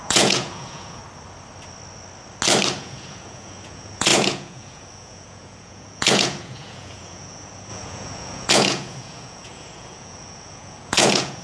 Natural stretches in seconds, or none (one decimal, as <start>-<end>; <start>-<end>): 1.0-2.8